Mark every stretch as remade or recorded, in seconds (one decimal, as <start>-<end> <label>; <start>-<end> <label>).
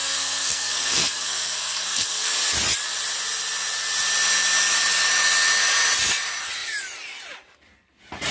0.0-2.3 remade; 2.3-8.3 recorded